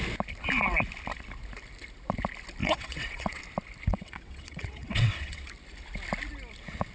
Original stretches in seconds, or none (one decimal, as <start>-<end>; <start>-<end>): 0.0-2.6; 3.4-3.9; 5.5-6.9